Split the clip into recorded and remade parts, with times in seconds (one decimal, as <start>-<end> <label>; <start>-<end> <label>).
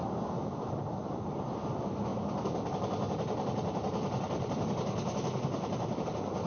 0.0-6.5 recorded